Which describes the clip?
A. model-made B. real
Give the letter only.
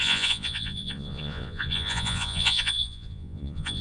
A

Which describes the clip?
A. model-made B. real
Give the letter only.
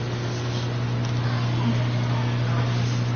B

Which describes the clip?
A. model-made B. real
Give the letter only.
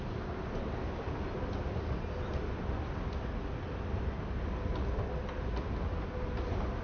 B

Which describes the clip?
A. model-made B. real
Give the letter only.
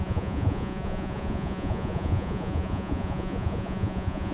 A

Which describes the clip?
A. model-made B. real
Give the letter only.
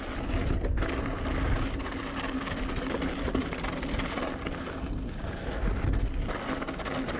B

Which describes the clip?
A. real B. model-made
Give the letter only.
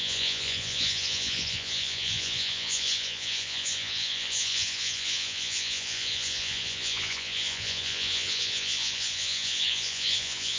B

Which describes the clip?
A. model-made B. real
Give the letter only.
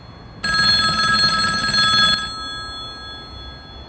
B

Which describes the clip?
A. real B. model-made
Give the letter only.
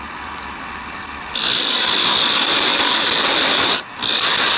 A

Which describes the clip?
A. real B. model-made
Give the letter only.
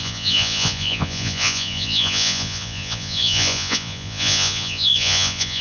B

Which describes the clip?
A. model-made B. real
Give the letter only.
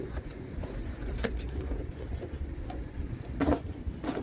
A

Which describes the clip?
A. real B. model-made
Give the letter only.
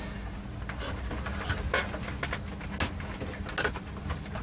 A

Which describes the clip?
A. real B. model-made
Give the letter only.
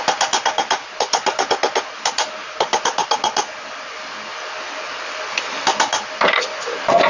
A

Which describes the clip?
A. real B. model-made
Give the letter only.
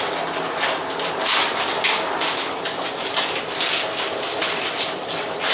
A